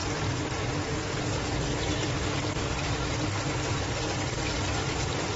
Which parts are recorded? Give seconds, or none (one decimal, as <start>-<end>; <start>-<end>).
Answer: 0.0-5.4